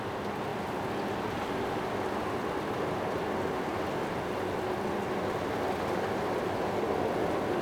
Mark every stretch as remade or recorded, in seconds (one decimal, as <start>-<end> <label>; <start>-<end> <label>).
0.0-7.6 recorded